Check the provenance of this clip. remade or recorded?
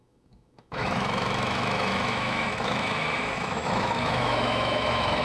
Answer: remade